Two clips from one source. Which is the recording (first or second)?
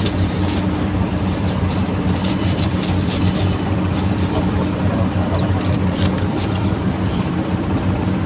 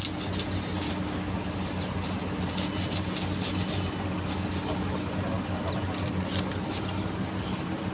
second